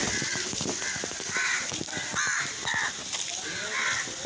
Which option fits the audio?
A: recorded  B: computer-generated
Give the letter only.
A